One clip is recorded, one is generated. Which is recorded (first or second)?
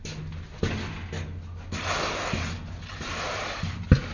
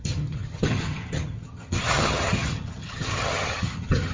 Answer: first